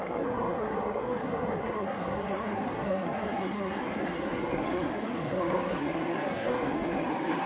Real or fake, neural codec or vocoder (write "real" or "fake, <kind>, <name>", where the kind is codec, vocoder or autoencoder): fake, codec, SNAC